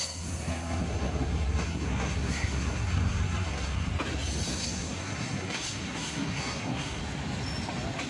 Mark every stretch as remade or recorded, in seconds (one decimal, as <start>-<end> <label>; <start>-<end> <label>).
0.0-3.9 remade; 3.9-4.5 recorded; 4.5-7.0 remade; 7.0-8.1 recorded